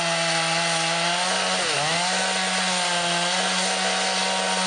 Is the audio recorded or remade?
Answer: recorded